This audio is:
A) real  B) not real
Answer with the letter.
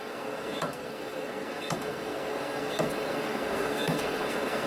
B